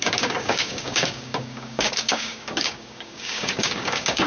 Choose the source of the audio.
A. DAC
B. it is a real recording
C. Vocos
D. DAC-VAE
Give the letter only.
A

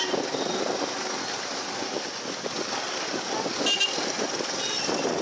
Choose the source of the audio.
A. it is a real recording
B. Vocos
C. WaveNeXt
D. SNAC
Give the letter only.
A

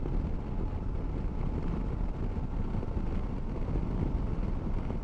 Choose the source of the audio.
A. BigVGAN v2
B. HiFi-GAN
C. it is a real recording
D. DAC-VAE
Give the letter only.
C